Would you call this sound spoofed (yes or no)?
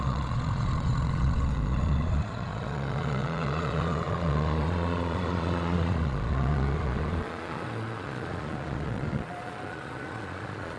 yes